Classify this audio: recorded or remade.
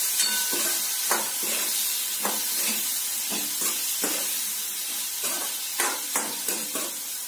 recorded